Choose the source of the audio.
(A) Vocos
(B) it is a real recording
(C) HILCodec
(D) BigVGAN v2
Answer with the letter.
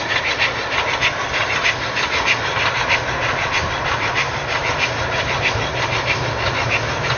B